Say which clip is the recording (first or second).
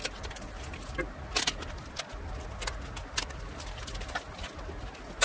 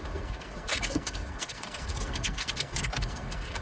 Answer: first